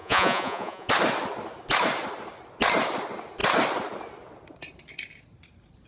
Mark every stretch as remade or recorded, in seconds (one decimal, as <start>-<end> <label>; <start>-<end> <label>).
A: 0.0-0.9 remade; 0.9-5.9 recorded